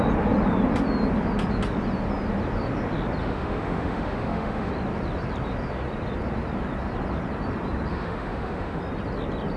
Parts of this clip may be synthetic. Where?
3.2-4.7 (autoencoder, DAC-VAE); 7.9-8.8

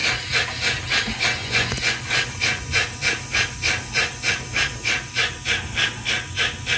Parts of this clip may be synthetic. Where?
1.4-2.0 (vocoder, Vocos)